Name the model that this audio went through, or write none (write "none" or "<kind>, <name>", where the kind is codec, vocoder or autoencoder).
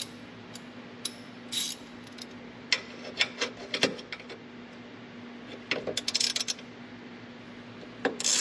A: none